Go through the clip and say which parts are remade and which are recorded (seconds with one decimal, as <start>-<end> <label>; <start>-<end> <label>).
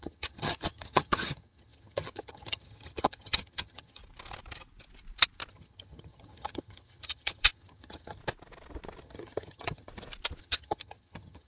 0.0-4.0 remade; 4.0-5.5 recorded; 5.5-8.2 remade; 8.2-9.0 recorded; 9.0-9.9 remade; 9.9-10.4 recorded; 10.4-11.5 remade